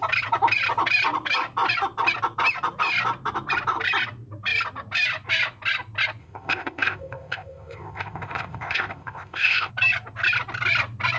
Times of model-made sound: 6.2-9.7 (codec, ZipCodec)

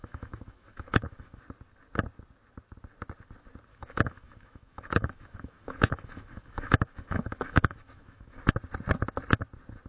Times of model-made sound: 0.0-1.4 (autoencoder, DAC-VAE); 3.7-8.4

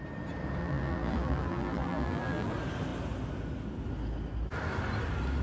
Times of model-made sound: 0.6-2.5 (vocoder, BigVGAN v2)

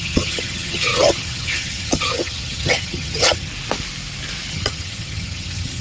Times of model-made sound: 0.0-3.5 (vocoder, HiFi-GAN); 4.5-5.8

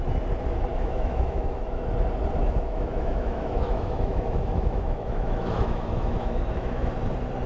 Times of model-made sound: 0.7-1.8 (autoencoder, DAC-VAE); 2.4-6.9